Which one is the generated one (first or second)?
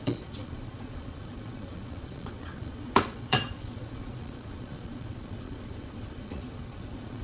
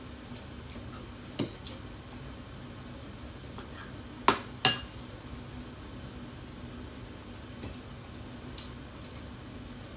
first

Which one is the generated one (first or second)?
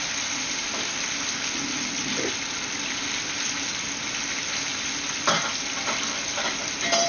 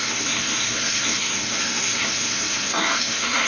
second